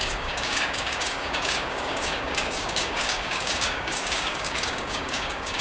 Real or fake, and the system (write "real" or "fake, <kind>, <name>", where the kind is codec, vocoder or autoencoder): fake, codec, DAC